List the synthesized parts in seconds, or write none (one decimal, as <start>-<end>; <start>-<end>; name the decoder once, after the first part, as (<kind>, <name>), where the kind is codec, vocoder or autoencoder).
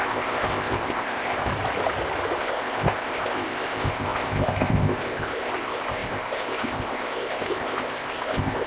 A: 0.0-1.5 (codec, ZipCodec); 2.4-8.7